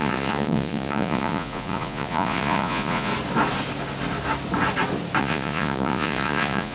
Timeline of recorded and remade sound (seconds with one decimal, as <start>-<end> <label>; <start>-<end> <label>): 0.0-3.1 remade; 3.1-5.2 recorded; 5.2-6.7 remade